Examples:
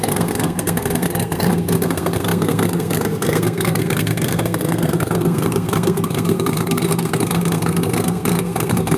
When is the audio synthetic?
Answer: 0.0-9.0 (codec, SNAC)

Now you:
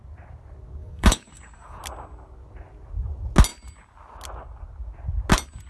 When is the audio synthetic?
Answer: 0.8-1.8 (codec, DAC)

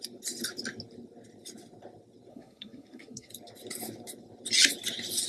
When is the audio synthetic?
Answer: 2.3-3.3 (codec, SNAC)

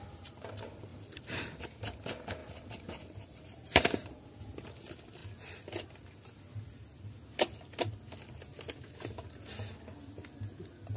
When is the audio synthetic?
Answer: 0.9-1.4 (vocoder, BigVGAN v2); 2.4-4.2

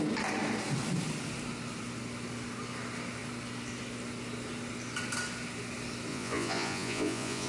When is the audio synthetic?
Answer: 6.1-7.5 (vocoder, Vocos)

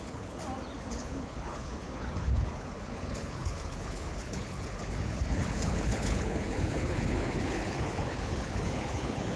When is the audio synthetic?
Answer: 0.0-0.4 (codec, HILCodec); 0.9-9.4

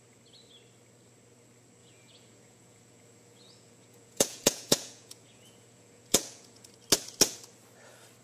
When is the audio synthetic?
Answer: 1.8-6.7 (vocoder, Vocos)